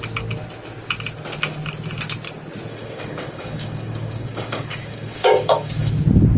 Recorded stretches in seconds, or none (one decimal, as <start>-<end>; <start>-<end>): 0.0-2.7; 5.9-6.4